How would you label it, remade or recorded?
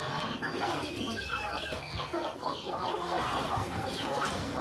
remade